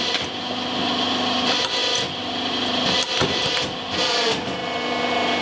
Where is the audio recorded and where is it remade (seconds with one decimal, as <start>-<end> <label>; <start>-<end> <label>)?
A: 0.0-5.4 recorded